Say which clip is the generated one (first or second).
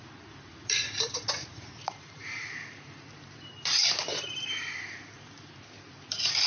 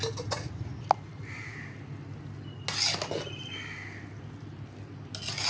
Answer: first